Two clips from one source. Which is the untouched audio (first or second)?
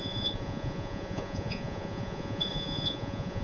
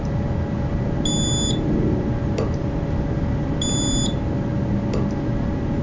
second